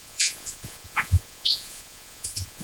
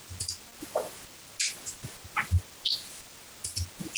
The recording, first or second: second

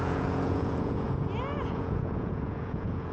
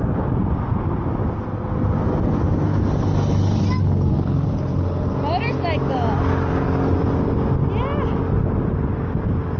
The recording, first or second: second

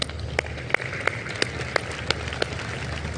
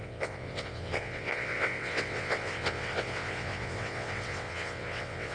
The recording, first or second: first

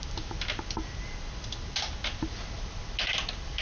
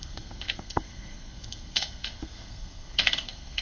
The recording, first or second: first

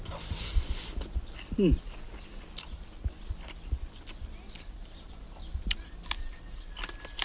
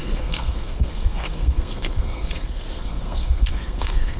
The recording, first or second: first